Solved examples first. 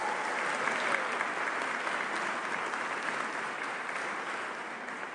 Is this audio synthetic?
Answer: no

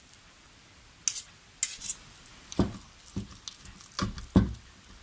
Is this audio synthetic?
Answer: no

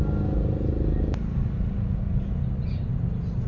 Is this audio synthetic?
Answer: no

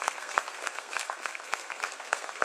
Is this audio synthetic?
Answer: yes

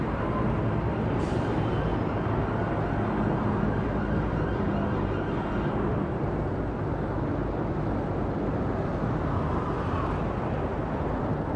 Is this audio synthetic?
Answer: no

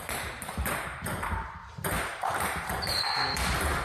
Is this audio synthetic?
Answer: yes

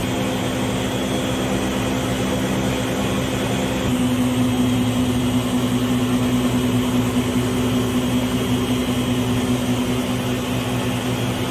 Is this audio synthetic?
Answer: no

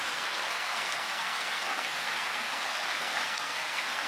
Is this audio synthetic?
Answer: yes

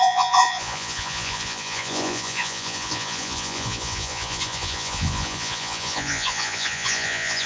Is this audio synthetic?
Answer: yes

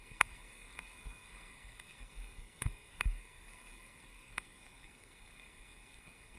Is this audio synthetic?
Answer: yes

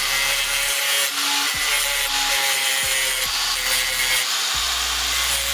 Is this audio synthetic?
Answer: no